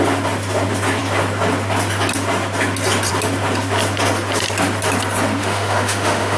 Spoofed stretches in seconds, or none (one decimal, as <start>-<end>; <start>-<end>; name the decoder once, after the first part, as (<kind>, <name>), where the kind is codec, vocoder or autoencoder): 5.4-6.4 (autoencoder, DAC-VAE)